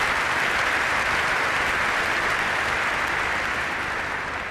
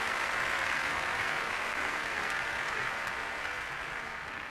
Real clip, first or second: first